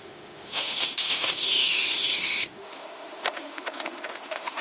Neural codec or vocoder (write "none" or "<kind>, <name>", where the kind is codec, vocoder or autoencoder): autoencoder, DAC-VAE